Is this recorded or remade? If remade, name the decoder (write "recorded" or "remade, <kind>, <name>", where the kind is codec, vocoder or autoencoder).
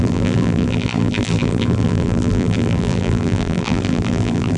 remade, vocoder, BigVGAN v2